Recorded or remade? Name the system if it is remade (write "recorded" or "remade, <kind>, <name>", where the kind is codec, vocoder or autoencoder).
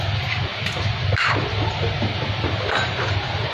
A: remade, vocoder, BigVGAN v2